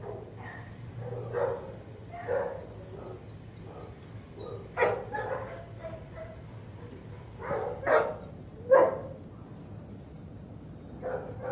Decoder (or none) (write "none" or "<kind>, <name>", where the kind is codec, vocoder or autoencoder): none